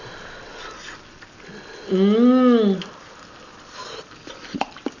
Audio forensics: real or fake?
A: real